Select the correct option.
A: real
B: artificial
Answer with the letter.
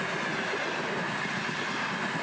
A